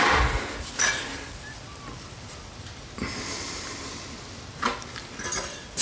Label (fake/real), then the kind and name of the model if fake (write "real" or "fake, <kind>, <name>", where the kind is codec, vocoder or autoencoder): real